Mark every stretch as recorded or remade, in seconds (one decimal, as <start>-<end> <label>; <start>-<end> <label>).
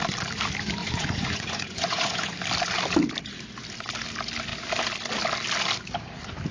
0.0-0.8 recorded; 0.8-2.4 remade; 2.4-6.5 recorded